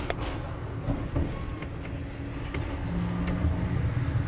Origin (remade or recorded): recorded